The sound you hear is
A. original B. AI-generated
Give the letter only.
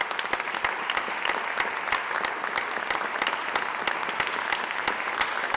A